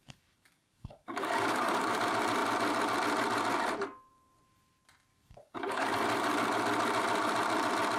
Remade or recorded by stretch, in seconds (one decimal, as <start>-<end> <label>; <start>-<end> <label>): 0.0-2.0 remade; 2.0-5.1 recorded; 5.1-6.0 remade; 6.0-8.0 recorded